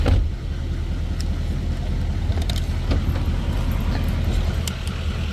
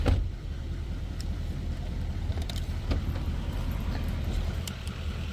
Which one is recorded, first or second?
first